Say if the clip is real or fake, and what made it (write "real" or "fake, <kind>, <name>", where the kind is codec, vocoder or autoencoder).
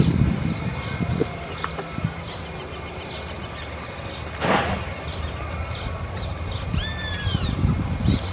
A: real